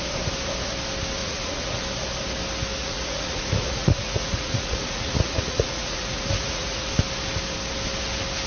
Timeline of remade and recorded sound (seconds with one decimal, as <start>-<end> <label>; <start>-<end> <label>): 0.0-1.2 recorded; 1.2-1.8 remade; 1.8-2.8 recorded; 2.8-6.9 remade; 6.9-8.5 recorded